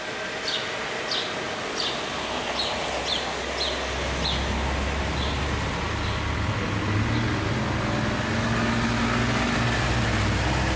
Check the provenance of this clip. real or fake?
real